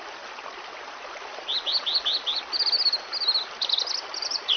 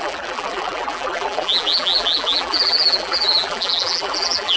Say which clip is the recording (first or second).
first